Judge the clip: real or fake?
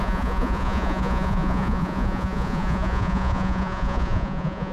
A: fake